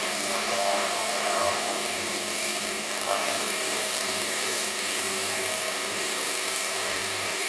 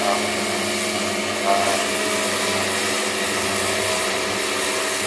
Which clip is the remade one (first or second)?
first